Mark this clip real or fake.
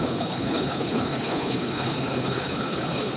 fake